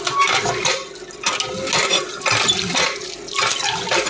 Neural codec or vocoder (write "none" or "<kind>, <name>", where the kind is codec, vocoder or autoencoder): none